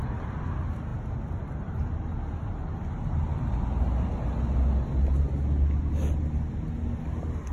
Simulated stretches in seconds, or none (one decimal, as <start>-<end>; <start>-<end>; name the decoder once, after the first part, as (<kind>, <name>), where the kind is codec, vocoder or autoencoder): none